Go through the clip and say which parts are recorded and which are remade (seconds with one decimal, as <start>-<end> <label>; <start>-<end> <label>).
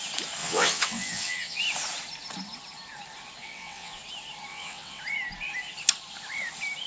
0.0-0.4 recorded; 0.4-1.6 remade; 1.6-3.4 recorded; 3.4-4.0 remade; 4.0-4.5 recorded; 4.5-5.0 remade; 5.0-6.9 recorded